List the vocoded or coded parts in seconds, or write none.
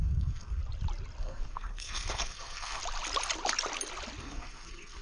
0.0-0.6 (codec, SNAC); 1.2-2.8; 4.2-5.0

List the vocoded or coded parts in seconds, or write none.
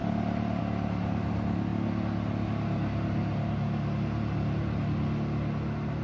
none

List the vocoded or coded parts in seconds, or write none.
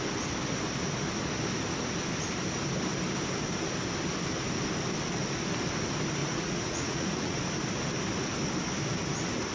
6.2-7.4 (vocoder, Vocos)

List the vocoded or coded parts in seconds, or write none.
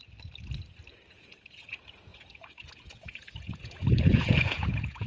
1.1-5.1 (vocoder, Vocos)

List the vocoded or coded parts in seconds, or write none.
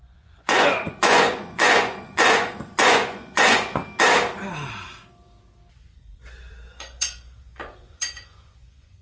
0.0-3.8 (vocoder, Vocos); 5.7-9.0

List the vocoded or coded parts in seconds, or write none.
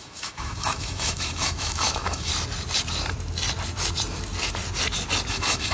0.0-2.3 (autoencoder, DAC-VAE); 5.3-5.7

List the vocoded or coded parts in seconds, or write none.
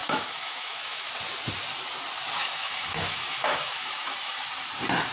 0.0-1.1 (autoencoder, DAC-VAE); 2.4-4.4